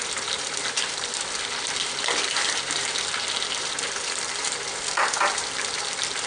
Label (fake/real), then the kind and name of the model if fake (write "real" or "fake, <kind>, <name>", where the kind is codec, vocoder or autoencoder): real